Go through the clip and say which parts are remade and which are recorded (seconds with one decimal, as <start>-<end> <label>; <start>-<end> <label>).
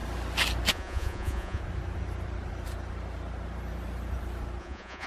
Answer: 0.0-0.7 recorded; 0.7-1.6 remade; 1.6-4.6 recorded; 4.6-5.1 remade